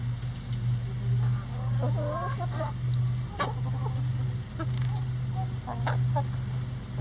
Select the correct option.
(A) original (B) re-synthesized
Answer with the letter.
A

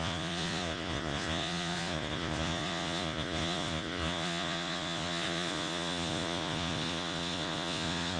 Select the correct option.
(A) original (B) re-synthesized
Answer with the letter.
B